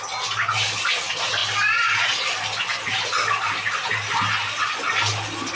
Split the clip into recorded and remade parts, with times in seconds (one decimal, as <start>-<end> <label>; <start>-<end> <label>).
0.0-5.5 recorded